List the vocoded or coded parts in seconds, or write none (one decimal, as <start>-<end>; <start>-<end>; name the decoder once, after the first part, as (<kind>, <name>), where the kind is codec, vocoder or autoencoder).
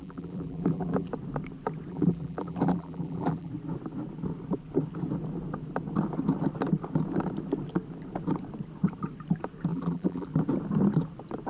0.0-1.1 (vocoder, BigVGAN v2); 1.9-3.5; 9.7-10.3